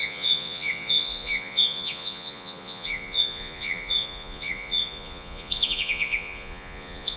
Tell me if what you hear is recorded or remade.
remade